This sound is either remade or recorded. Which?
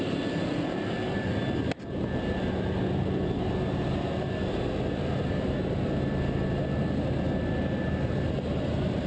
recorded